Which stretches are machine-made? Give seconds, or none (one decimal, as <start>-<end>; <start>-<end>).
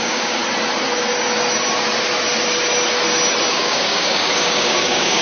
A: 0.0-0.4; 3.5-5.2